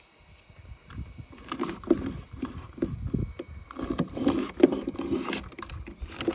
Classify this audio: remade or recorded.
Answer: recorded